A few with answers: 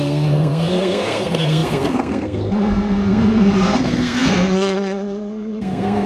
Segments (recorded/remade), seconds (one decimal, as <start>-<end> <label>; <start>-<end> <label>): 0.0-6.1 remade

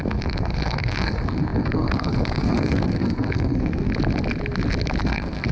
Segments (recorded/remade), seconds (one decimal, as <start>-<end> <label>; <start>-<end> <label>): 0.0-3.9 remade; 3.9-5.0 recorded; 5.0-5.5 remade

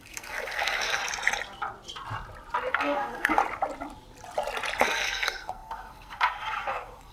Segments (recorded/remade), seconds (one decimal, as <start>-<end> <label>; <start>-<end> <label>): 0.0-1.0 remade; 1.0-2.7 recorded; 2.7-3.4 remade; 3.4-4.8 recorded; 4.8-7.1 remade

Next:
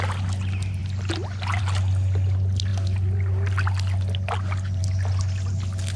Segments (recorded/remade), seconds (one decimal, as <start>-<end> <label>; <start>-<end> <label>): 0.0-6.0 recorded